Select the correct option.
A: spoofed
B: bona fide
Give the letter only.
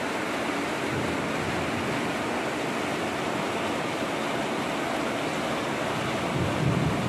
B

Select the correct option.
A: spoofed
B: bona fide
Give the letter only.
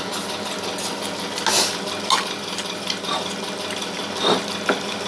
B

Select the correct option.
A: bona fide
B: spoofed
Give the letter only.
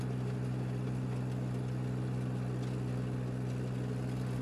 A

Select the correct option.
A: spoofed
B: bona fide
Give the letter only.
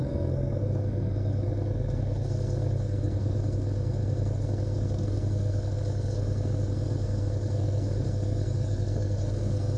A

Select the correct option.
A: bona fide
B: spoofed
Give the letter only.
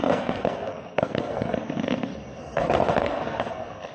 B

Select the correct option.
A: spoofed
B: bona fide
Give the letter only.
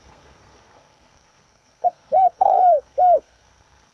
A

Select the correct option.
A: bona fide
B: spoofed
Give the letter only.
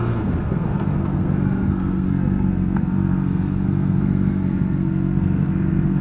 B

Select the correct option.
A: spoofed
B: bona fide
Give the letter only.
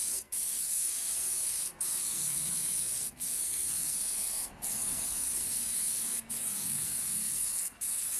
A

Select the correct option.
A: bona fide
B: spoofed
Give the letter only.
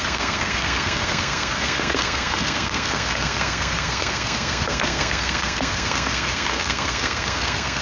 B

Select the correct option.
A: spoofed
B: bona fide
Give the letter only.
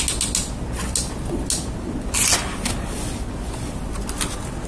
B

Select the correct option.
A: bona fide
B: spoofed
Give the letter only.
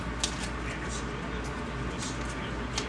A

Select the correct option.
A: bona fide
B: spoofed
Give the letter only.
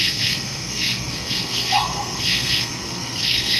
B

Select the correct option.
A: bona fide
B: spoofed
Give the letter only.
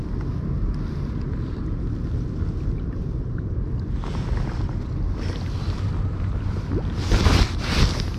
A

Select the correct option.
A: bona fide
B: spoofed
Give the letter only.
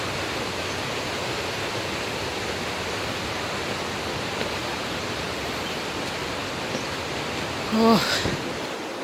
A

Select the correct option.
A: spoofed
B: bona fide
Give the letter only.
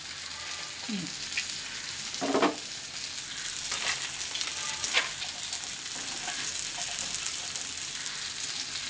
B